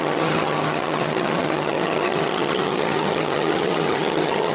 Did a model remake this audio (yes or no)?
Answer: yes